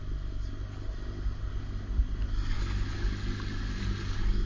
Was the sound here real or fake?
real